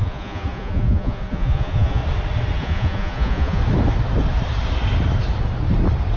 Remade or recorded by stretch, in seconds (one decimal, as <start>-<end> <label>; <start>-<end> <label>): 0.0-2.0 remade; 2.0-2.6 recorded; 2.6-3.6 remade; 3.6-6.2 recorded